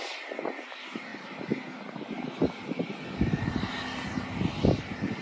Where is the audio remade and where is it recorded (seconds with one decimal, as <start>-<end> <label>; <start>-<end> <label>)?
0.0-5.2 recorded

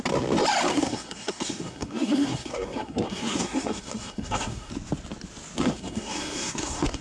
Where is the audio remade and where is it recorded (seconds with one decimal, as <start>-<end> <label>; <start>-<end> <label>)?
0.0-0.7 recorded; 0.7-4.7 remade; 4.7-5.6 recorded; 5.6-7.0 remade

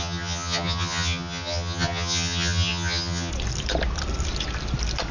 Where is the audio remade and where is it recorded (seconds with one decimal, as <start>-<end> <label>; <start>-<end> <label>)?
0.0-3.3 remade; 3.3-5.1 recorded

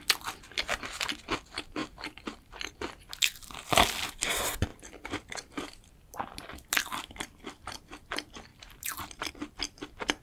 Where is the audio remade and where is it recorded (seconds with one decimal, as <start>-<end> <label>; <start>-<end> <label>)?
0.0-1.8 recorded; 1.8-2.7 remade; 2.7-4.7 recorded; 4.7-5.9 remade; 5.9-8.5 recorded; 8.5-9.3 remade; 9.3-10.2 recorded

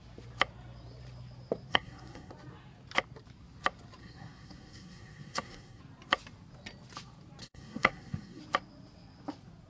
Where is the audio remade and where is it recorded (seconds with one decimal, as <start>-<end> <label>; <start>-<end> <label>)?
0.0-1.7 recorded; 1.7-2.3 remade; 2.3-4.0 recorded; 4.0-5.8 remade; 5.8-7.4 recorded; 7.4-8.4 remade; 8.4-9.7 recorded

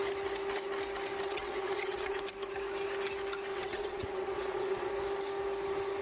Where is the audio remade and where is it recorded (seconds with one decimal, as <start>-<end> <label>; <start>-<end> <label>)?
0.0-1.3 recorded; 1.3-2.2 remade; 2.2-3.5 recorded; 3.5-4.9 remade; 4.9-6.0 recorded

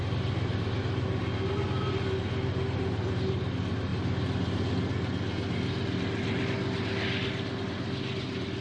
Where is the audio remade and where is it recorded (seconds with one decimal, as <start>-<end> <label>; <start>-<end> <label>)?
0.0-8.6 recorded

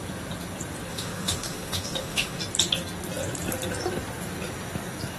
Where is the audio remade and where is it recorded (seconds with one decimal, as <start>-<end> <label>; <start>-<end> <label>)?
0.0-0.9 recorded; 0.9-2.4 remade; 2.4-5.2 recorded